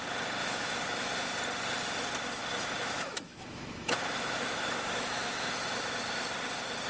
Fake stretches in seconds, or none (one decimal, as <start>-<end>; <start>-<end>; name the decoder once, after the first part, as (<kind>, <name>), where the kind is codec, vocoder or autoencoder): 0.4-1.1 (autoencoder, DAC-VAE); 2.4-6.0